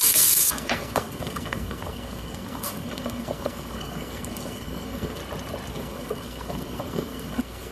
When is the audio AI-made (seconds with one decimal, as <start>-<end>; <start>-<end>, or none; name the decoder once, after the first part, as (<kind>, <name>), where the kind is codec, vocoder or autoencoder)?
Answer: 0.0-5.2 (codec, SNAC); 5.7-7.7